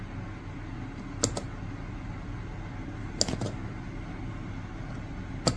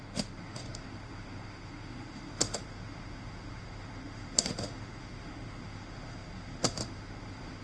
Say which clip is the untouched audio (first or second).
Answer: first